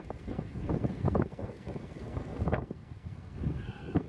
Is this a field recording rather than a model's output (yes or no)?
no